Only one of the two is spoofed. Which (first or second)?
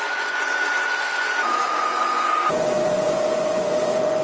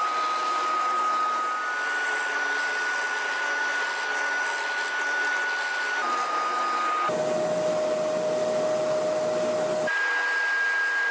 first